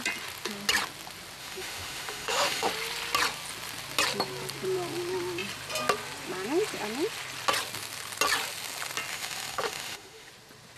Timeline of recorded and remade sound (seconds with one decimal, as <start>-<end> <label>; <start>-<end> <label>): 0.0-1.4 recorded; 1.4-2.7 remade; 2.7-9.1 recorded; 9.1-10.3 remade; 10.3-10.8 recorded